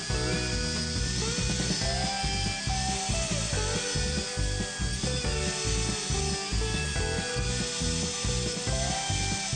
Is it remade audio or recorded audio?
recorded